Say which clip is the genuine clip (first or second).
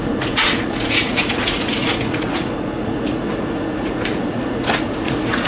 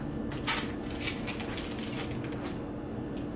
second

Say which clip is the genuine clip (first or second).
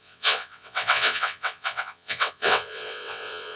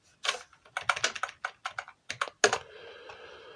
second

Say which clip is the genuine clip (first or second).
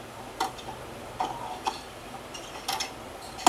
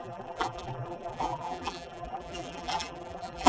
first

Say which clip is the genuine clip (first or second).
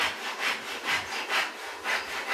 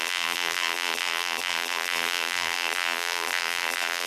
first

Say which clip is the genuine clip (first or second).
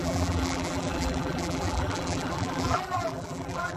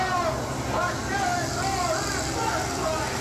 second